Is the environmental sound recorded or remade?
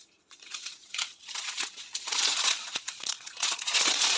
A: remade